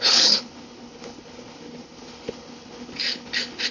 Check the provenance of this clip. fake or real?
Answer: fake